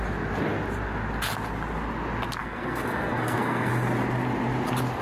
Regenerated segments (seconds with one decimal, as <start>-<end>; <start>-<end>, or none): 2.4-3.7